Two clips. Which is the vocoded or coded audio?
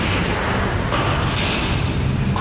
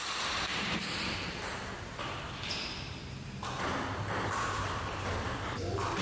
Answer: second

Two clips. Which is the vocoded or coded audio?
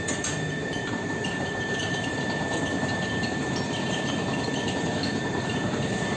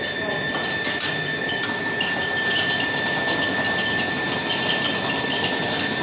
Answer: first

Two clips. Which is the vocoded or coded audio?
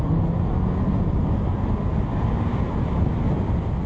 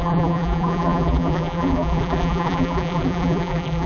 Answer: second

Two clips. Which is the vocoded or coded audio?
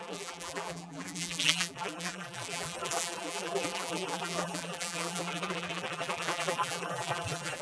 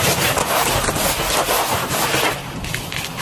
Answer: first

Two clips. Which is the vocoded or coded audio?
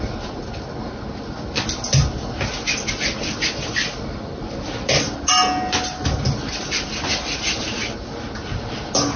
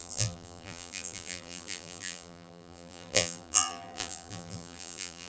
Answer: second